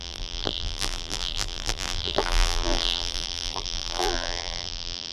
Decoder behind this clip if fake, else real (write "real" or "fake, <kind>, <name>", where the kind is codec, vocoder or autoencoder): fake, vocoder, BigVGAN v2